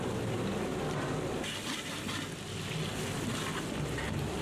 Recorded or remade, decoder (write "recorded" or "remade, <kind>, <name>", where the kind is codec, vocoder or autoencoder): recorded